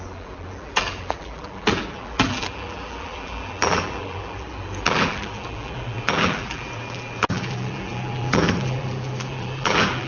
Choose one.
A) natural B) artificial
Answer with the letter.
B